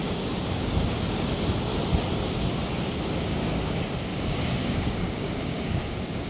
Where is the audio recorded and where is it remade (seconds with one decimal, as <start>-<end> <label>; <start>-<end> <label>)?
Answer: 0.0-1.7 remade; 1.7-3.0 recorded; 3.0-6.3 remade